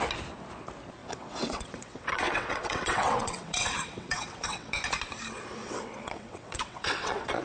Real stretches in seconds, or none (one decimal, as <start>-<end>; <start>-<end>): 0.0-1.0; 4.7-5.6